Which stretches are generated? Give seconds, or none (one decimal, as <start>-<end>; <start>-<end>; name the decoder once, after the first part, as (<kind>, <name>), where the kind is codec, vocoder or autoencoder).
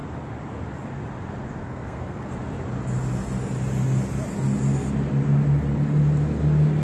1.6-2.3 (codec, SNAC)